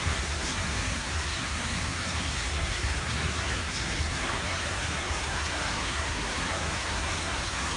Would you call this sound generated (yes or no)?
yes